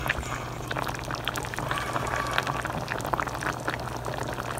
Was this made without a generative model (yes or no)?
yes